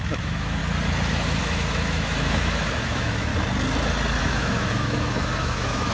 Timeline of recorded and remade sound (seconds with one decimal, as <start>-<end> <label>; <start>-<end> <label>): 0.0-0.6 remade; 0.6-1.4 recorded; 1.4-3.3 remade; 3.3-4.2 recorded; 4.2-5.9 remade